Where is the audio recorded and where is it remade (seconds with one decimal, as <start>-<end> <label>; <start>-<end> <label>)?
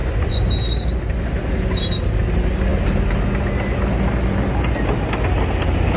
0.0-0.5 remade; 0.5-6.0 recorded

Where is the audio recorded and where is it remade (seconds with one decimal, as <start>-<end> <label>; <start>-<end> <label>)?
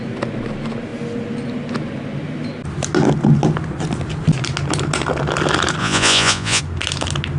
0.0-5.8 recorded; 5.8-6.6 remade; 6.6-7.4 recorded